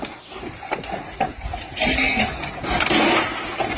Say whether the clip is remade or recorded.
recorded